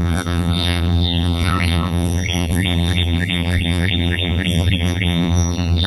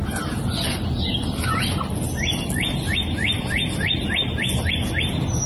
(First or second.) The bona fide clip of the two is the second